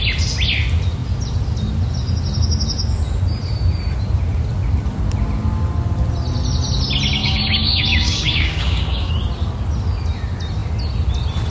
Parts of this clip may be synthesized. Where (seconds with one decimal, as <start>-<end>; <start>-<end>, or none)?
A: 7.2-9.1